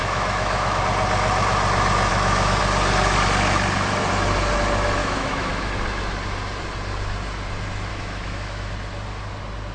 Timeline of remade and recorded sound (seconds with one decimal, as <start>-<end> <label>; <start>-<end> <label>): 0.0-0.8 remade; 0.8-2.1 recorded; 2.1-2.6 remade; 2.6-5.0 recorded; 5.0-5.7 remade; 5.7-7.9 recorded; 7.9-8.7 remade; 8.7-9.7 recorded